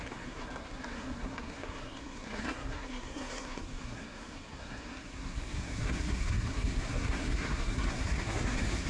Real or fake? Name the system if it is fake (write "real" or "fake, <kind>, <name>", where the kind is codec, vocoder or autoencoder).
fake, codec, SNAC